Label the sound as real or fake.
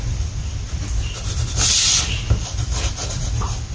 real